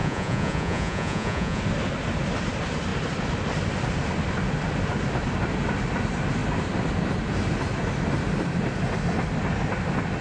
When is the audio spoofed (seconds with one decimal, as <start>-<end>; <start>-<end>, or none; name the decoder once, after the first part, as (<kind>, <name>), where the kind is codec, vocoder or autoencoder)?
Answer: 0.0-1.6 (vocoder, Vocos)